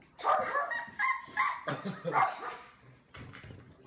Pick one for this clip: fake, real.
real